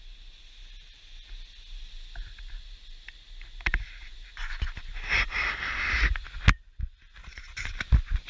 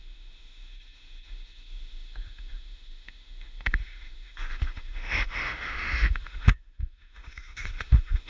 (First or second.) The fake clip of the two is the second